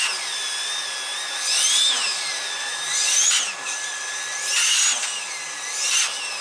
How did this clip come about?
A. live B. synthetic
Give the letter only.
A